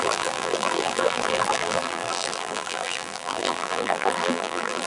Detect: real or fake fake